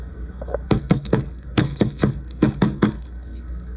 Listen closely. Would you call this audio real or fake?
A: fake